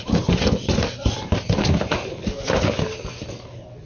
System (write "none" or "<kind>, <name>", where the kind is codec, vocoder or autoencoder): none